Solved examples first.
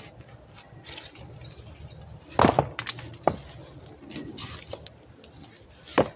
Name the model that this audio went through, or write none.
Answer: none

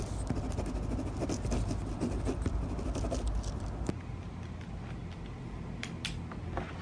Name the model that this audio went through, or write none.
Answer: none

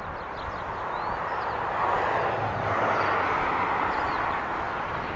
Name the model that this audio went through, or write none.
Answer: none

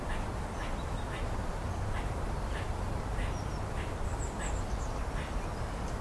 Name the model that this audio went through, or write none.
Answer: none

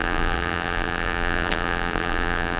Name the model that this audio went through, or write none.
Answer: vocoder, BigVGAN v2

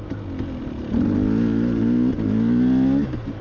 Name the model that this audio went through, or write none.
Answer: none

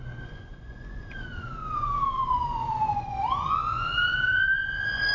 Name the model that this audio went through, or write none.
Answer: vocoder, Vocos